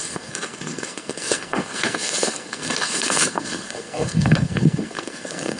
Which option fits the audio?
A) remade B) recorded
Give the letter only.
A